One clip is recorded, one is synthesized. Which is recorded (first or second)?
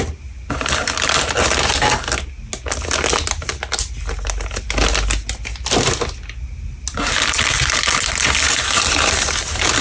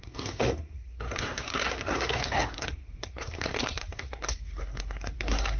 first